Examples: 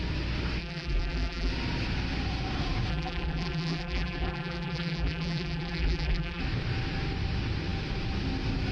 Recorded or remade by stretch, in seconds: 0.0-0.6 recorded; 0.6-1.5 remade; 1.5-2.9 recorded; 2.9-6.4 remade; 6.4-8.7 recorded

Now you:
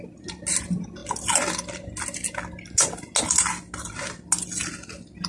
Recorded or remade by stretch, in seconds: 0.0-5.3 recorded

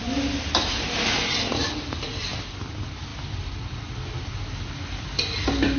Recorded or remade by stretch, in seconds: 0.0-5.8 recorded

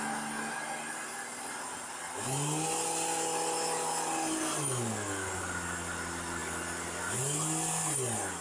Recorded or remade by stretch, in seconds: 0.0-8.4 recorded

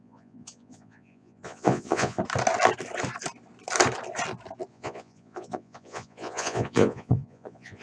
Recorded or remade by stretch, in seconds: 0.0-2.2 remade; 2.2-4.7 recorded; 4.7-7.8 remade

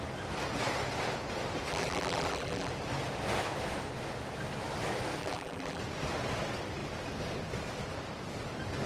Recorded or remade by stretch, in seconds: 0.0-1.7 recorded; 1.7-2.7 remade; 2.7-5.2 recorded; 5.2-5.8 remade; 5.8-8.9 recorded